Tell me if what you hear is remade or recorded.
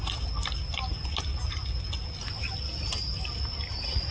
recorded